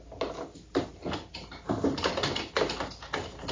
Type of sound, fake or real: real